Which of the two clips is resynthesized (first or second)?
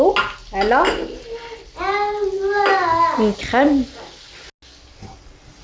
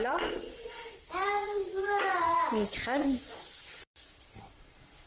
second